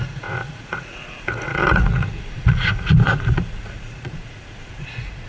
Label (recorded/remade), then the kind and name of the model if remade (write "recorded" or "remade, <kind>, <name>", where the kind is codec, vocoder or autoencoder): remade, vocoder, Vocos